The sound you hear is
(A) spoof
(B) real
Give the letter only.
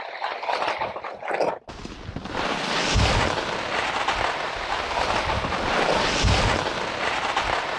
B